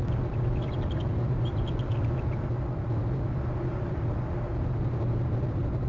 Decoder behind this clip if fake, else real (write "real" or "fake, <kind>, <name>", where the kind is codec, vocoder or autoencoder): real